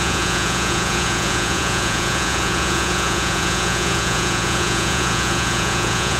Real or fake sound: fake